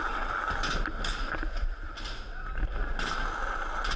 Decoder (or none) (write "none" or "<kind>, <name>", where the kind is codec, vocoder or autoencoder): none